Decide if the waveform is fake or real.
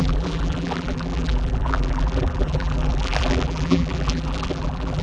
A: fake